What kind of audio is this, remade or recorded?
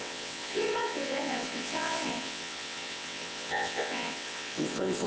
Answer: remade